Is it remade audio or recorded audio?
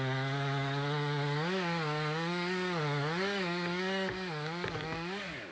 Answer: remade